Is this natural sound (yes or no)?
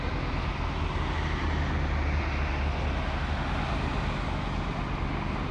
yes